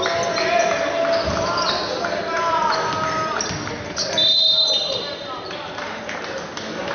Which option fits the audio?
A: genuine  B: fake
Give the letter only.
A